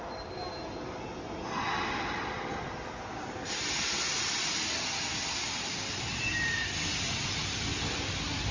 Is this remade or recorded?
recorded